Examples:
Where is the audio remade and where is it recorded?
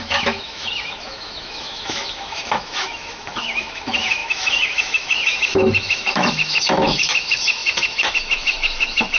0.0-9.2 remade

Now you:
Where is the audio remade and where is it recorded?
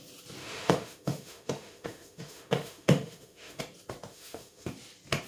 0.0-0.4 recorded; 0.4-3.6 remade; 3.6-4.1 recorded; 4.1-4.7 remade; 4.7-5.3 recorded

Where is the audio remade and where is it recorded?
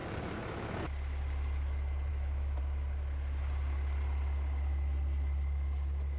0.0-0.8 remade; 0.8-2.1 recorded; 2.1-2.6 remade; 2.6-6.2 recorded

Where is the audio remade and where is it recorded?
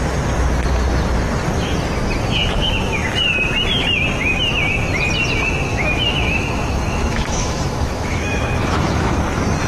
0.0-5.7 recorded; 5.7-9.2 remade; 9.2-9.7 recorded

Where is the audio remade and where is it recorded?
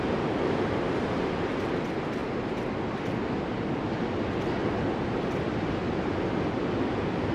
0.0-7.3 recorded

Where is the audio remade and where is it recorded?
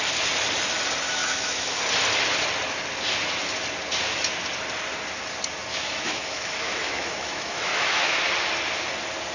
0.0-1.2 recorded; 1.2-1.8 remade; 1.8-5.7 recorded; 5.7-8.2 remade; 8.2-9.3 recorded